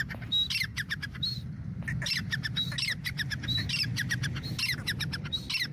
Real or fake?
real